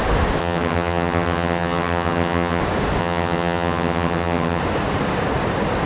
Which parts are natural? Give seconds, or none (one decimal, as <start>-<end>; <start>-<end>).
0.0-0.4; 2.6-3.0; 4.6-5.9